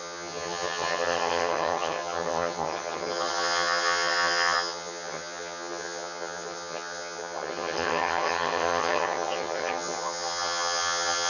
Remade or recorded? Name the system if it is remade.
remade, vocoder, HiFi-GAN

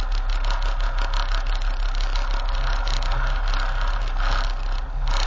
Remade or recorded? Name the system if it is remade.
recorded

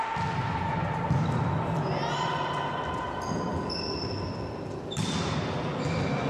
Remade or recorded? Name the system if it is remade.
recorded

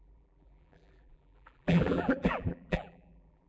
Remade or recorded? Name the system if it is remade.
remade, vocoder, BigVGAN v2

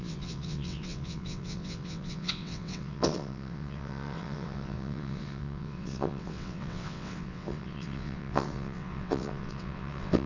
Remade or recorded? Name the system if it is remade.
remade, vocoder, WaveNeXt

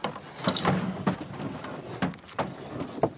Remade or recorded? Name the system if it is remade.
recorded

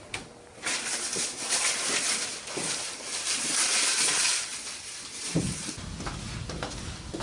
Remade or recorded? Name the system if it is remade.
recorded